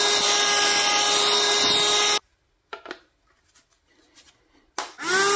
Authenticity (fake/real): real